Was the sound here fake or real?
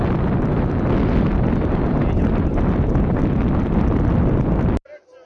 real